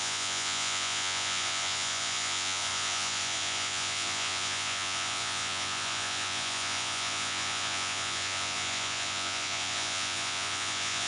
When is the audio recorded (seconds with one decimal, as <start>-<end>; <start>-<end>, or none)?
none